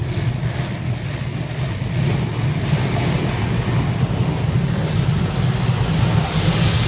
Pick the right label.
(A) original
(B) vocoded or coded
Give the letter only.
A